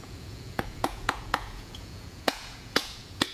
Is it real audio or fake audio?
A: fake